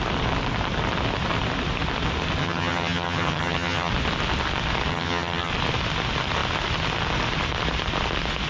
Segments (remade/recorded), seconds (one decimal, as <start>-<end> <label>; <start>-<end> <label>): 0.0-2.4 recorded; 2.4-3.9 remade; 3.9-4.9 recorded; 4.9-5.5 remade; 5.5-8.5 recorded